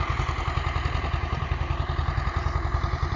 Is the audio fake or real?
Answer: real